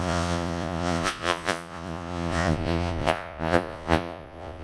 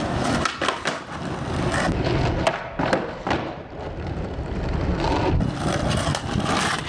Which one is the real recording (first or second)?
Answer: second